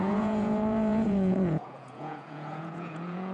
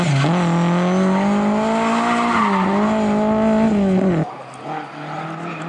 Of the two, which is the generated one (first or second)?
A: first